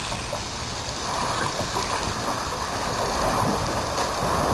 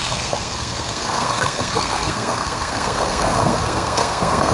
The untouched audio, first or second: first